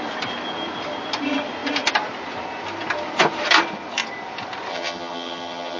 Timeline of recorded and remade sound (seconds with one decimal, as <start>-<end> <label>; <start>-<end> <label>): 0.0-4.7 recorded; 4.7-5.8 remade